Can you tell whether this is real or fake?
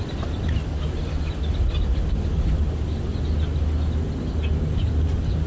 real